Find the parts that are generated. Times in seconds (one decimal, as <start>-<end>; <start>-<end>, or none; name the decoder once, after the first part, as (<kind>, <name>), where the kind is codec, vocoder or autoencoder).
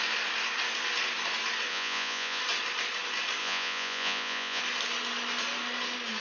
1.7-2.4 (vocoder, Vocos); 3.4-4.6